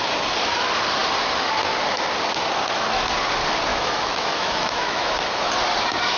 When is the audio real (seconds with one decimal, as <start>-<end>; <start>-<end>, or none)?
0.0-3.7; 5.5-6.2